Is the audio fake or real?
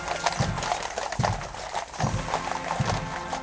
real